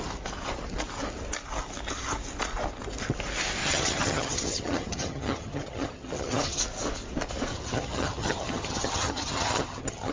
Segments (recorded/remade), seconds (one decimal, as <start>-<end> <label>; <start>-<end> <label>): 0.0-3.6 recorded; 3.6-6.6 remade; 6.6-7.5 recorded; 7.5-10.1 remade